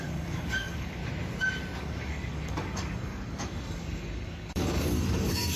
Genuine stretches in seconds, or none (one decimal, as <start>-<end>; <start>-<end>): 1.0-1.8